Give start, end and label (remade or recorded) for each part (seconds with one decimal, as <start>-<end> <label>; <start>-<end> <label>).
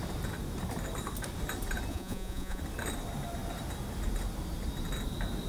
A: 0.0-1.9 recorded; 1.9-2.6 remade; 2.6-5.5 recorded